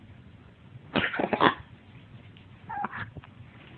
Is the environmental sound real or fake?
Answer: fake